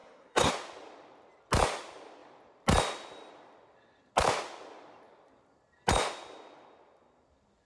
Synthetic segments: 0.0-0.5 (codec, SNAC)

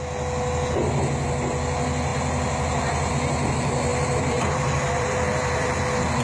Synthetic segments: 3.9-5.8 (vocoder, BigVGAN v2)

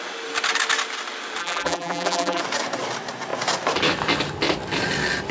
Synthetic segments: 1.4-2.4 (vocoder, BigVGAN v2)

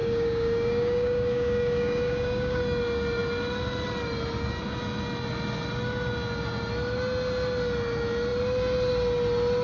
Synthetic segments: 0.0-2.6 (codec, DAC)